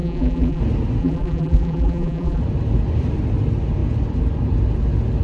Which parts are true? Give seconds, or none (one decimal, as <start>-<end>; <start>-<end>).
0.6-1.0; 2.4-5.2